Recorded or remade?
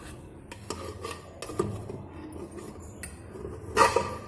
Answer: recorded